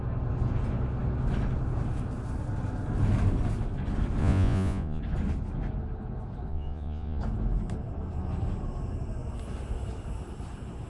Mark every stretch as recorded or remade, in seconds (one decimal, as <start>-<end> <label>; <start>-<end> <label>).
0.0-4.2 recorded; 4.2-5.0 remade; 5.0-6.5 recorded; 6.5-7.2 remade; 7.2-10.9 recorded